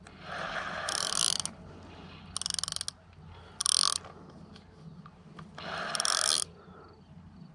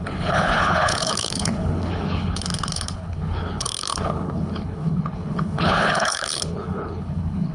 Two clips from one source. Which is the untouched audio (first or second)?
first